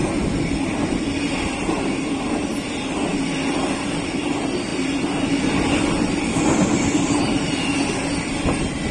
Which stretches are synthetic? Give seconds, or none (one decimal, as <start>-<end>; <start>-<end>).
none